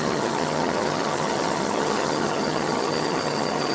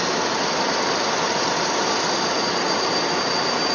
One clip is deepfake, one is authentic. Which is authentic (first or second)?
second